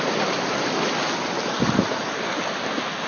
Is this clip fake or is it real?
real